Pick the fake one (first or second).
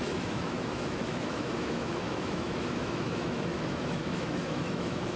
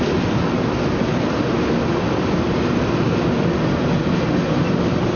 first